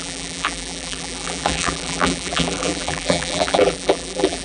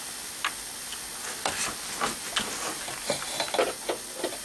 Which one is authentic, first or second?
second